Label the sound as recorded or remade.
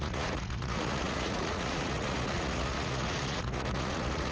remade